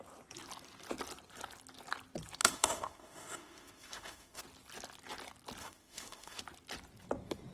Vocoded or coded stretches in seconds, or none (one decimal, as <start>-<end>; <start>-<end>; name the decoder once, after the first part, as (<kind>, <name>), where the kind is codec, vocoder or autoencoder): 2.4-4.4 (autoencoder, DAC-VAE); 5.6-6.4